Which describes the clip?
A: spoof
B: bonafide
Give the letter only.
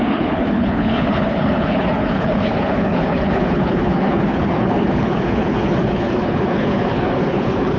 A